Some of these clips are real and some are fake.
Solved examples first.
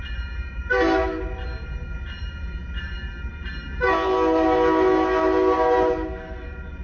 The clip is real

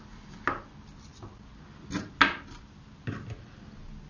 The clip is real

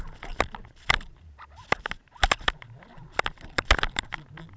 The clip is real